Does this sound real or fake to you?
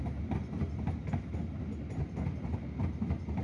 real